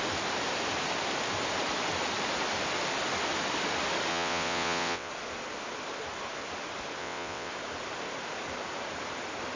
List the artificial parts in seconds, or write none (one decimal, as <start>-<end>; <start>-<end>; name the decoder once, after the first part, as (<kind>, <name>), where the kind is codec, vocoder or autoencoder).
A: 4.1-5.1 (vocoder, WaveNeXt); 7.0-7.5